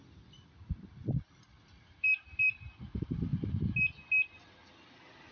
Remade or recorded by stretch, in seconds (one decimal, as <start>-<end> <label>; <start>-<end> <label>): 0.0-1.0 recorded; 1.0-2.6 remade; 2.6-5.3 recorded

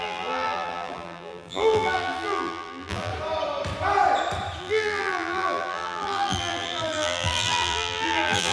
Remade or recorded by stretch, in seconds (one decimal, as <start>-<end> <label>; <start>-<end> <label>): 0.0-3.1 remade; 3.1-4.6 recorded; 4.6-8.5 remade

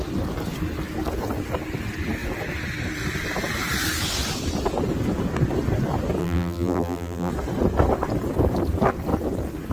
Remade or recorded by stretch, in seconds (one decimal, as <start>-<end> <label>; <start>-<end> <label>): 0.0-6.2 recorded; 6.2-7.3 remade; 7.3-9.7 recorded

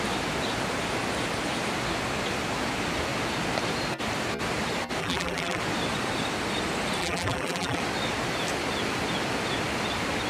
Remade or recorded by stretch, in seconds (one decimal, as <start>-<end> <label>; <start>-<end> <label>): 0.0-5.0 recorded; 5.0-5.6 remade; 5.6-7.0 recorded; 7.0-7.8 remade; 7.8-10.3 recorded